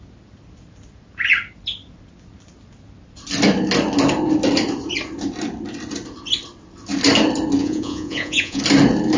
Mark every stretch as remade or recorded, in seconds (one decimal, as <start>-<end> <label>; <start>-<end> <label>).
0.0-7.6 recorded; 7.6-8.6 remade; 8.6-9.2 recorded